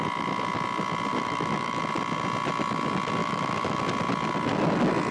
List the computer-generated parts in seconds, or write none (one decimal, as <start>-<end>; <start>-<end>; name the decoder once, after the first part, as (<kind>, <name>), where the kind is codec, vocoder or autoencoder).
1.1-1.8 (autoencoder, DAC-VAE); 3.2-3.8